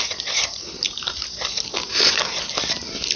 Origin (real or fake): real